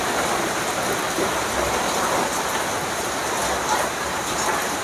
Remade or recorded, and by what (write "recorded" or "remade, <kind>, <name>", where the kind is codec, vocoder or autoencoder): recorded